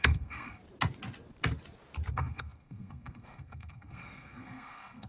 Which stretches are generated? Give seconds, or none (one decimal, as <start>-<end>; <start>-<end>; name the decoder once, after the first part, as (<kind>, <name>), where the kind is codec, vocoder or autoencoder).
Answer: 0.0-0.6 (codec, SNAC); 2.1-5.1